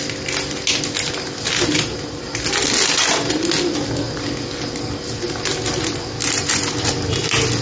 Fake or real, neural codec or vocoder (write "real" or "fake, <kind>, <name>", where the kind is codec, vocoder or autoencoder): real